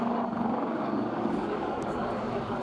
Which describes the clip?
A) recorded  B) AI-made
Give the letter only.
B